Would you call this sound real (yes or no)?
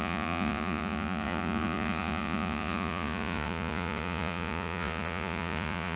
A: no